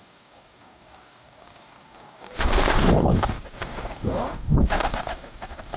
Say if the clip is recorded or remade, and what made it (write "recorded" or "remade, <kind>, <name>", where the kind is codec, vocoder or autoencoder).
remade, codec, DAC